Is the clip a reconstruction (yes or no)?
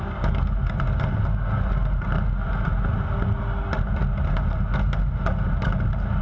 no